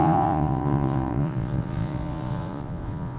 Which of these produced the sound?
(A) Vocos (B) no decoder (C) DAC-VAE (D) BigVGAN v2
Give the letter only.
A